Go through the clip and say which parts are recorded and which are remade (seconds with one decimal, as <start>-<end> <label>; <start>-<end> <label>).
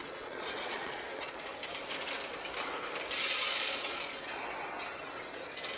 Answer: 0.0-1.5 remade; 1.5-3.4 recorded; 3.4-4.4 remade; 4.4-5.8 recorded